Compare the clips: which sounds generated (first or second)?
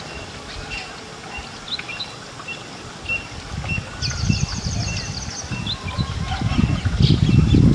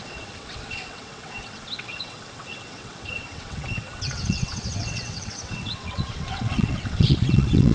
second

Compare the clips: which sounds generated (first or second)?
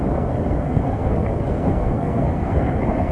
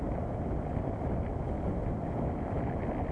first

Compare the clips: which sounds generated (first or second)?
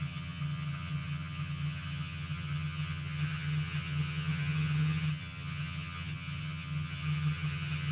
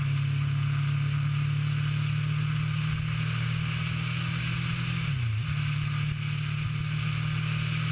first